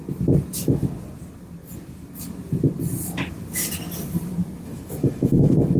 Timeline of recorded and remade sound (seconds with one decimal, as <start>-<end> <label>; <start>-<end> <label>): 0.0-4.4 recorded; 4.4-5.8 remade